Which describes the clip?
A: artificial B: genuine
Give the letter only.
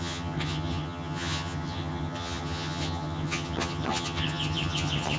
A